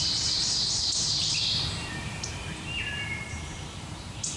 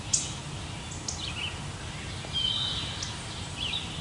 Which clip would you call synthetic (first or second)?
first